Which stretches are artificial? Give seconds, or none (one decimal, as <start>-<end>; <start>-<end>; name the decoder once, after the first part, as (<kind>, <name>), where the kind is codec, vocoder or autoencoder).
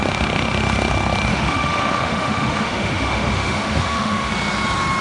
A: 1.3-4.3 (autoencoder, DAC-VAE)